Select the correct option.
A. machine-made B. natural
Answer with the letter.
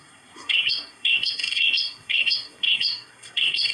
A